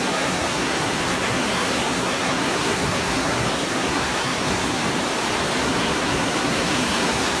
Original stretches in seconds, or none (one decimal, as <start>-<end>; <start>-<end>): 4.8-5.6